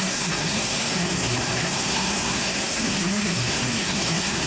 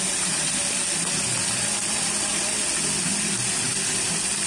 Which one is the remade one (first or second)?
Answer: first